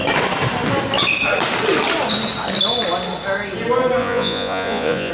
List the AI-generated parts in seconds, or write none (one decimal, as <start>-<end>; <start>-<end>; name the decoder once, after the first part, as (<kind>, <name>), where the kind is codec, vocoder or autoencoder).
4.0-5.1 (vocoder, Vocos)